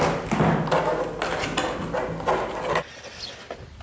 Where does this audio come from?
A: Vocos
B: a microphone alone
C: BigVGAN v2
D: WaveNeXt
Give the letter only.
B